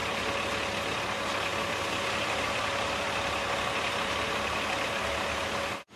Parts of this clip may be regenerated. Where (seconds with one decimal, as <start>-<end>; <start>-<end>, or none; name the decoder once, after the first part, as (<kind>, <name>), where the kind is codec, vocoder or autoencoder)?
1.5-5.1 (vocoder, BigVGAN v2)